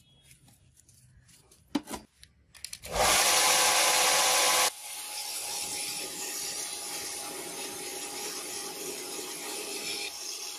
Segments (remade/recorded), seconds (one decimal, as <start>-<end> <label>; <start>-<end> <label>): 0.0-7.9 recorded; 7.9-8.5 remade; 8.5-10.6 recorded